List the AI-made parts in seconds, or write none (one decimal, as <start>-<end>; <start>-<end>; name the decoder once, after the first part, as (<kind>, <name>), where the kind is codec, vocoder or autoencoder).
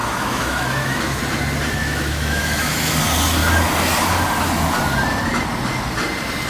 0.0-1.2 (autoencoder, DAC-VAE); 1.8-3.0